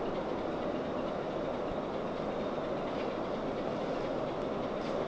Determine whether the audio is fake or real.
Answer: real